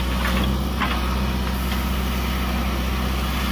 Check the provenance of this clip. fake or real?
real